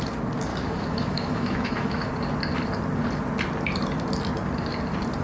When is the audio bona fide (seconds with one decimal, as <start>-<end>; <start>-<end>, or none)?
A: 0.0-0.5; 2.1-5.2